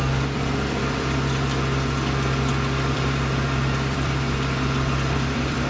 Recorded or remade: remade